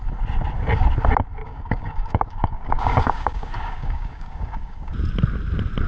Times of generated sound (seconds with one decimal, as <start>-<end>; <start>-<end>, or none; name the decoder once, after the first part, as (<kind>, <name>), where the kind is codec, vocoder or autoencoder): 1.4-4.9 (codec, DAC)